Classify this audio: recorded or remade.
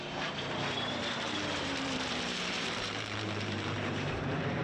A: remade